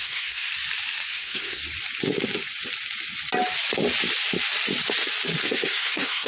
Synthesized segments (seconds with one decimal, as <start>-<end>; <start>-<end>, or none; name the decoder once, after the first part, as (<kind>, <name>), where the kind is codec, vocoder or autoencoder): 0.0-0.5 (codec, SNAC); 1.1-1.6; 5.4-6.3